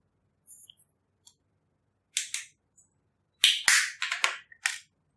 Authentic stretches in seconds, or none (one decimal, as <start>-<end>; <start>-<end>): 0.0-5.2